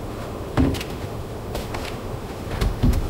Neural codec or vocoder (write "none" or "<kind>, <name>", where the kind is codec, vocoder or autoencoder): autoencoder, DAC-VAE